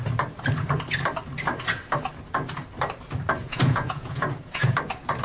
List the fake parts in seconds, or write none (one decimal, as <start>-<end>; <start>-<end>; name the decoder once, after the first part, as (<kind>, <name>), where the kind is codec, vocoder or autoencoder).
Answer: 3.4-4.7 (vocoder, Vocos)